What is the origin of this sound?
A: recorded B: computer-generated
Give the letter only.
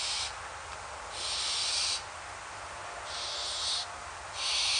A